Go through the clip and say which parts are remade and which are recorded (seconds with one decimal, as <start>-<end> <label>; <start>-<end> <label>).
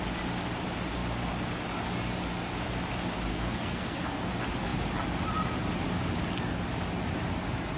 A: 0.0-3.3 recorded; 3.3-4.3 remade; 4.3-7.8 recorded